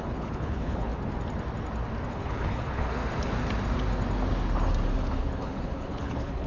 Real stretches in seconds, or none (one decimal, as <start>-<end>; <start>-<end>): 0.9-2.1; 3.0-5.0